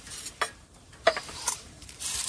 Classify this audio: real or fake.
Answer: fake